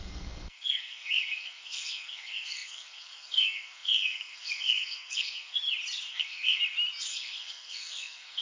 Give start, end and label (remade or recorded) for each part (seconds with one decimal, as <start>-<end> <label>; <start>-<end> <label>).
0.0-5.6 remade; 5.6-6.1 recorded; 6.1-6.6 remade; 6.6-7.1 recorded; 7.1-8.4 remade